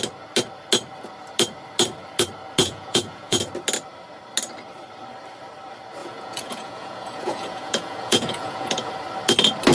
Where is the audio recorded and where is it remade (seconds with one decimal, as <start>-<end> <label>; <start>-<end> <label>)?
0.0-2.6 recorded; 2.6-3.4 remade; 3.4-6.0 recorded; 6.0-8.9 remade; 8.9-9.7 recorded